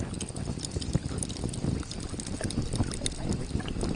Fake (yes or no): no